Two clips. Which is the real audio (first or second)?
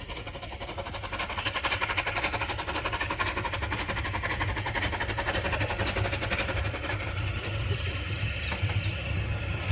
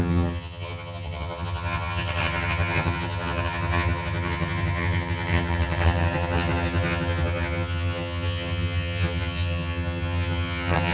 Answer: first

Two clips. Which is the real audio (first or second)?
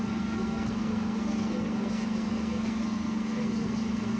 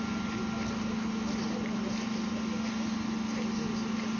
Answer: second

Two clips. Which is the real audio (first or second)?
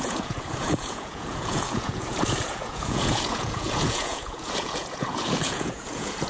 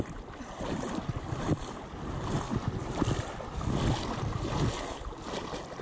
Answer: second